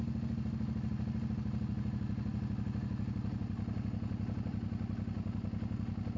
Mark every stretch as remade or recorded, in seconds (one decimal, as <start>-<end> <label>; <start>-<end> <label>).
0.0-6.2 recorded